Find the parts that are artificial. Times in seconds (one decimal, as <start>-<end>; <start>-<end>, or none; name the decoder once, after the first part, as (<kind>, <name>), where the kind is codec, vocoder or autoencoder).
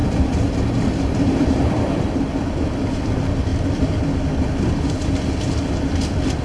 0.0-2.1 (vocoder, BigVGAN v2)